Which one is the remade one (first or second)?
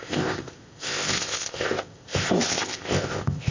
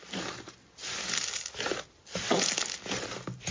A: first